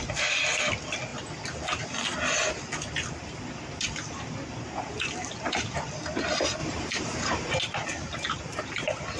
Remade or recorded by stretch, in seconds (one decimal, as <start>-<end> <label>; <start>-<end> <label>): 0.0-6.6 recorded; 6.6-7.6 remade; 7.6-9.2 recorded